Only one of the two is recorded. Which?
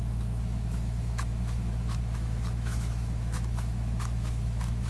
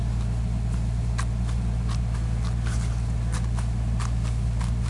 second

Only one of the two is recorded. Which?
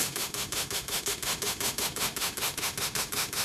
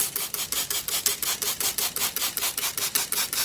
second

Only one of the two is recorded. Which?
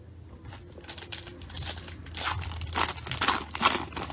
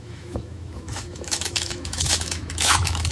first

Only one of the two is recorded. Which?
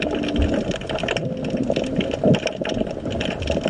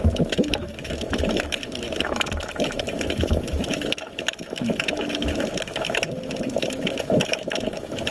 first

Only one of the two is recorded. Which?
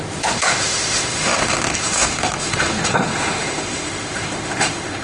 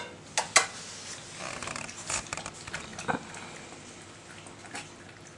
second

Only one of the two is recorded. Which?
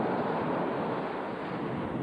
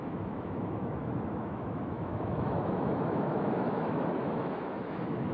first